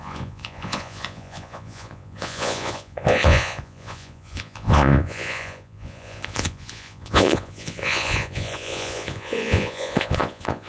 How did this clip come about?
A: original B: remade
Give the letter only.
B